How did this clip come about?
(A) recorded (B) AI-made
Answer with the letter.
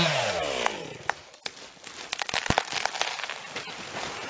A